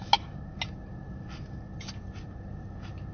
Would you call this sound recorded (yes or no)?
yes